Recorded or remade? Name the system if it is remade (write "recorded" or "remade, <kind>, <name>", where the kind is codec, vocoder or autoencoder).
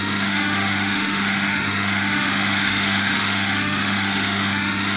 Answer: remade, autoencoder, DAC-VAE